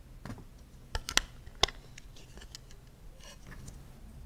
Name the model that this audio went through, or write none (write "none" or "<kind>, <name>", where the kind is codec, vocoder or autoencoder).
none